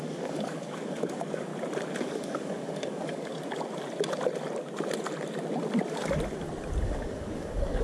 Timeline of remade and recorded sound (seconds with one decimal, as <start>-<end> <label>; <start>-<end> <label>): 0.0-1.5 remade; 1.5-2.0 recorded; 2.0-3.3 remade; 3.3-6.8 recorded; 6.8-7.8 remade